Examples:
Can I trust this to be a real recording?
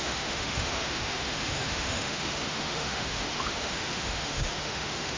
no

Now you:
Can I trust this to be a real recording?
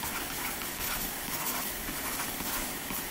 no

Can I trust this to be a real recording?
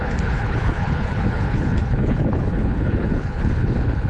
no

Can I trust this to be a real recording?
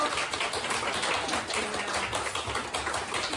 yes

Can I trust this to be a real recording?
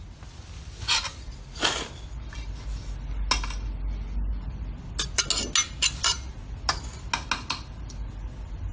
yes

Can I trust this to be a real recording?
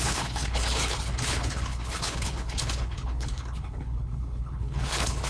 no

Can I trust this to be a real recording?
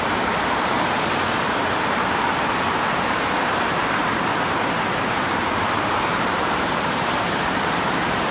no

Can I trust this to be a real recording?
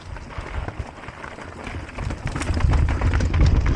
yes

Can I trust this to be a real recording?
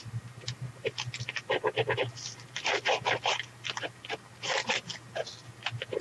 yes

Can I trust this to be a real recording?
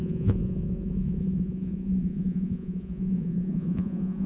no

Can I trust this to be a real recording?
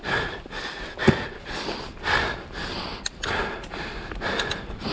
yes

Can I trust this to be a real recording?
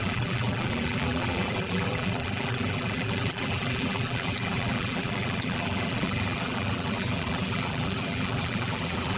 no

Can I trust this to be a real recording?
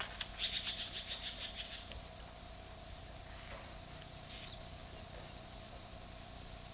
yes